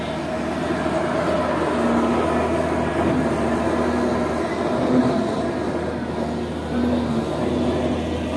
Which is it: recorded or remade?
recorded